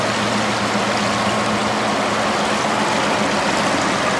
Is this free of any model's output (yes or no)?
yes